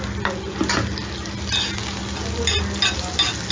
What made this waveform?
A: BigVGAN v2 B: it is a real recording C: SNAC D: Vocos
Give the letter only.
B